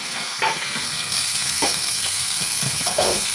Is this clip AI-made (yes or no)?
yes